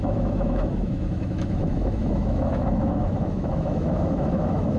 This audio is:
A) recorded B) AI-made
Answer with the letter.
B